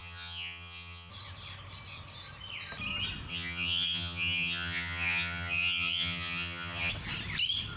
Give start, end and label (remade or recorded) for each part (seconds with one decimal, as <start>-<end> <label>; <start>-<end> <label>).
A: 0.0-1.1 remade; 1.1-3.3 recorded; 3.3-6.9 remade; 6.9-7.8 recorded